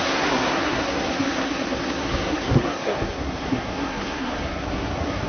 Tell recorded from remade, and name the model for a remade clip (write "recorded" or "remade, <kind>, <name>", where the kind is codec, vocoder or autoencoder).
remade, codec, SNAC